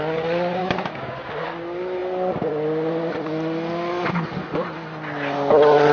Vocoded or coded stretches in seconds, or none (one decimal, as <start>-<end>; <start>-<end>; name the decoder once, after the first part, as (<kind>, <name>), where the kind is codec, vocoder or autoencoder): 0.6-1.3 (codec, DAC)